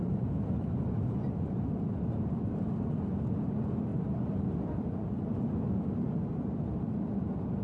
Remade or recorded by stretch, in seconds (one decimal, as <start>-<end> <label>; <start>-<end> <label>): 0.0-3.9 recorded; 3.9-5.8 remade; 5.8-6.3 recorded; 6.3-7.6 remade